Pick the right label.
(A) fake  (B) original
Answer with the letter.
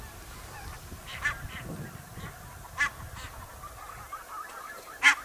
B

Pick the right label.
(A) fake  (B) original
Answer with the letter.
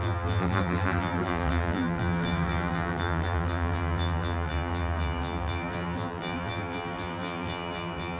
A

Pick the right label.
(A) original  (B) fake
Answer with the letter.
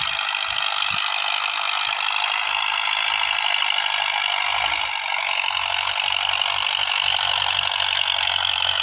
A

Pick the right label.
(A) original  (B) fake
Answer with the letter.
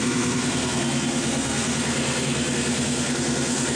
B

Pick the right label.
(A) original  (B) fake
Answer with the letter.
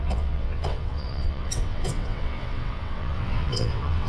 B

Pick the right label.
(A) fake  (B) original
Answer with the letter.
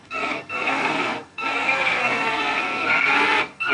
A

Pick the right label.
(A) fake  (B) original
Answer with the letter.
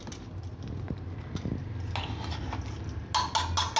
B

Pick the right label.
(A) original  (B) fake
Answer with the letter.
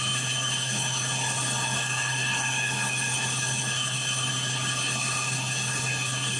B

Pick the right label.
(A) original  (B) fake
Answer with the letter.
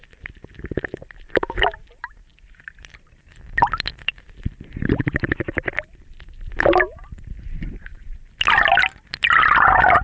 B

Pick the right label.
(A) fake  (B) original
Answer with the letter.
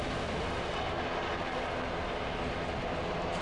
B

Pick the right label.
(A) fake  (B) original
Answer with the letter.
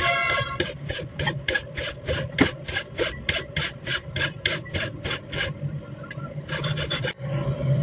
A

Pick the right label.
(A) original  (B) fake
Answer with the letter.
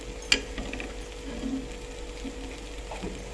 A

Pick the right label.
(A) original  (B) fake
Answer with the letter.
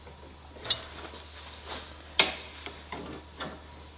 A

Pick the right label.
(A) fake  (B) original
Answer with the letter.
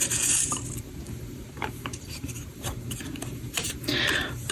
A